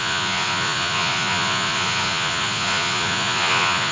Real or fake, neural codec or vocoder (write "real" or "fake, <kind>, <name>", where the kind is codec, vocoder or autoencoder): fake, vocoder, Vocos